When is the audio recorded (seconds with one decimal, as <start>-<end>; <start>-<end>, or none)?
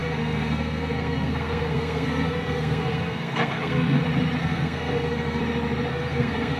4.0-4.4; 5.4-5.9